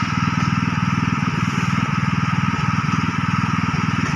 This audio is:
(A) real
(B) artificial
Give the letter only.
A